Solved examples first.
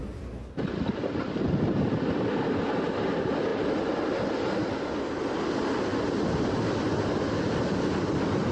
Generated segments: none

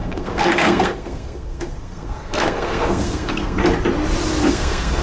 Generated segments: 0.0-3.6; 4.5-5.0

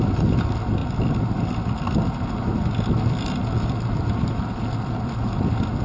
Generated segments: none

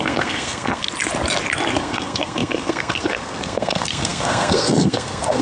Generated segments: 0.0-0.8; 1.8-5.4

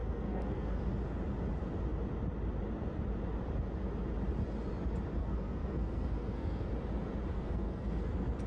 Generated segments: 0.0-0.8; 5.2-6.7; 7.3-8.1

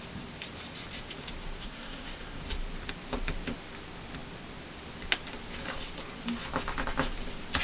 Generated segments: 1.6-2.4

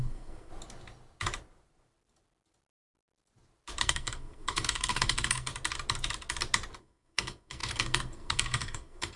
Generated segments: 0.0-0.5; 3.8-5.5; 6.8-9.2